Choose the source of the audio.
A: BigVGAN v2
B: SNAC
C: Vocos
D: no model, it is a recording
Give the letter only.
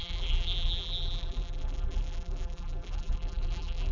A